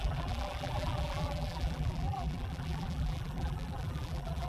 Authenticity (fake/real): fake